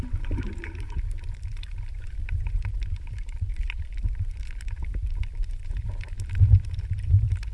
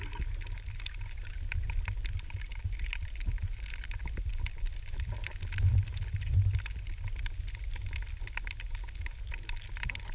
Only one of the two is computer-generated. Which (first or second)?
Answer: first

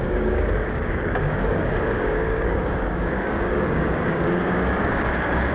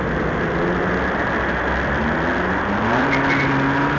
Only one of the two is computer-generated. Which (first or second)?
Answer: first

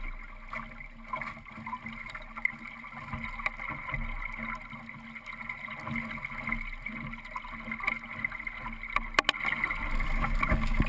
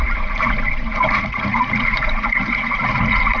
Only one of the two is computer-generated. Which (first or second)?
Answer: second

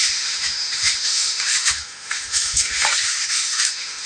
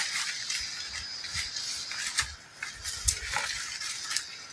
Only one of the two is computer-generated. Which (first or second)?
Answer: first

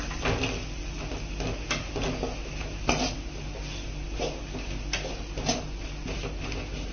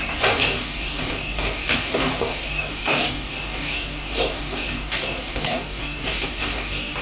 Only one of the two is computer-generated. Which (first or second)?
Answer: second